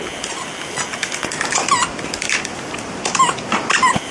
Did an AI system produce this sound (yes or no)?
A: yes